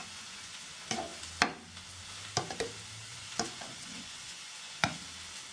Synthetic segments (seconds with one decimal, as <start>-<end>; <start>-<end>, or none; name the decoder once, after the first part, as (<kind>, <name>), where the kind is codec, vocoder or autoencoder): 0.0-0.6 (vocoder, Vocos); 3.1-5.0